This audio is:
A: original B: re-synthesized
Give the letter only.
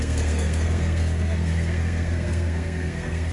B